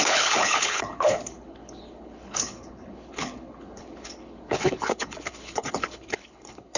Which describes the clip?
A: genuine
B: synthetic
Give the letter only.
B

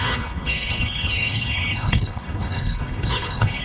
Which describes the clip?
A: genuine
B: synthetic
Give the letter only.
B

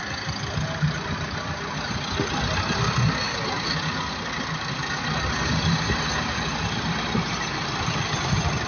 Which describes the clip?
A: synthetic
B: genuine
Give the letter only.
B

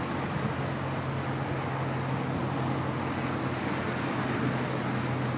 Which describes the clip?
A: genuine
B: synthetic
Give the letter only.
A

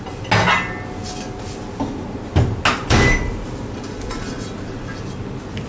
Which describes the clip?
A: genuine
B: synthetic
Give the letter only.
A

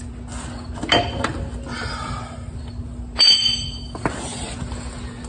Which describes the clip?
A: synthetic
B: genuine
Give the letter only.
B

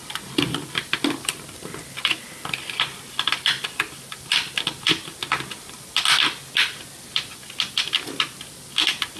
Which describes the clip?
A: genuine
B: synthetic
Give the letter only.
A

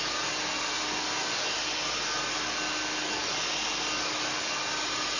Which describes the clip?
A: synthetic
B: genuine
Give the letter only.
B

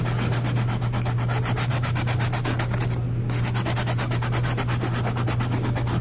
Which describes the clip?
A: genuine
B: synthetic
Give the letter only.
A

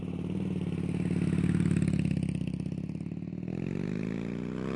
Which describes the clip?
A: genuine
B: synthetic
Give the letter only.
A